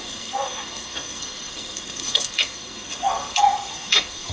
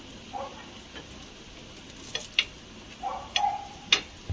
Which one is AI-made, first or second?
first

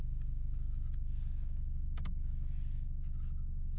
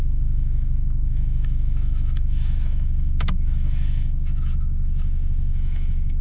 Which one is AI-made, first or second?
second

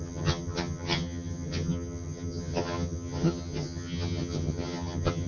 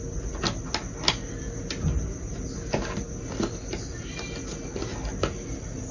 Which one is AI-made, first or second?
first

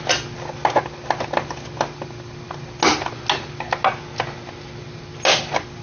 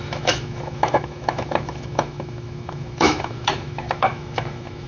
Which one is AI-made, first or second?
second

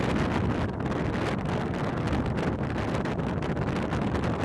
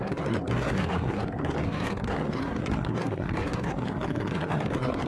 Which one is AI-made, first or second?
second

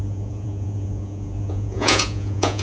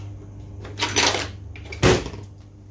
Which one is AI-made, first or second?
first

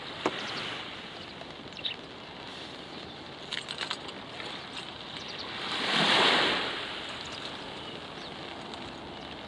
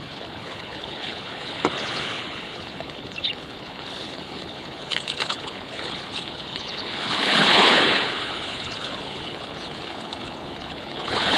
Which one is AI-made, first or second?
second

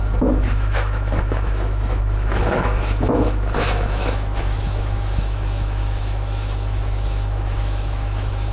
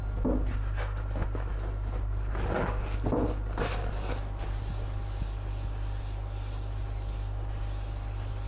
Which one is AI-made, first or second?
first